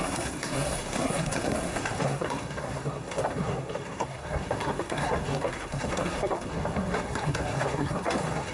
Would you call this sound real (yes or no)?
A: no